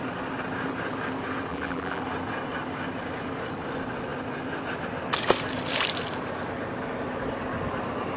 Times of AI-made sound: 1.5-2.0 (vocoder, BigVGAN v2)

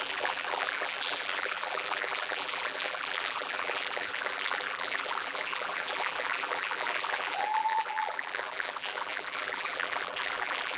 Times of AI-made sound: 0.0-10.8 (vocoder, BigVGAN v2)